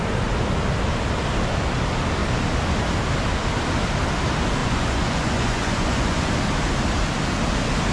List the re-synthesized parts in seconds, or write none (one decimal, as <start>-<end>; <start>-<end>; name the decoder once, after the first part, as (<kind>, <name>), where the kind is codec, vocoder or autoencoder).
4.6-6.3 (vocoder, Vocos)